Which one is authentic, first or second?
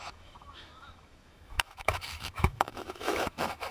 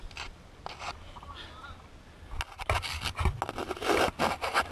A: second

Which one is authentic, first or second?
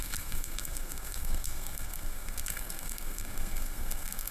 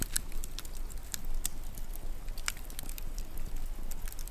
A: second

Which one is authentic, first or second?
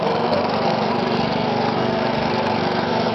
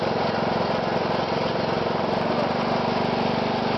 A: second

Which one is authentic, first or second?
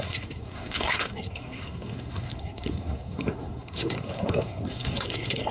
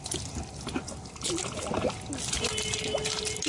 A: second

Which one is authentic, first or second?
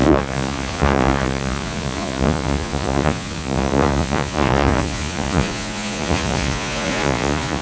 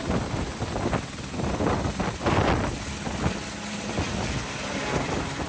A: second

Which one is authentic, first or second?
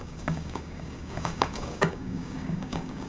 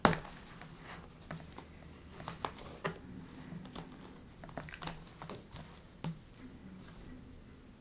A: second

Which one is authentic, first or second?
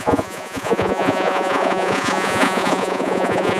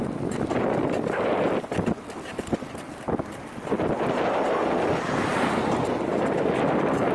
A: second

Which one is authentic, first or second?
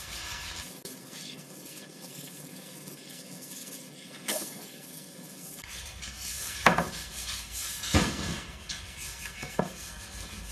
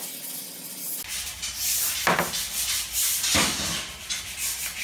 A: second